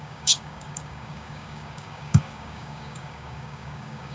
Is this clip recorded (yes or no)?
no